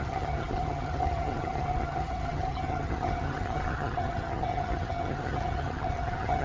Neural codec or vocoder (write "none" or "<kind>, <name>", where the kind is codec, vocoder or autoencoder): vocoder, HiFi-GAN